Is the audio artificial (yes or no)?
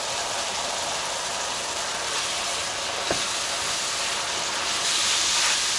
no